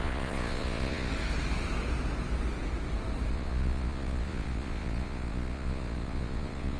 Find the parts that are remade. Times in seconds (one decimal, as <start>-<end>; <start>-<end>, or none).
0.0-1.1; 3.3-6.8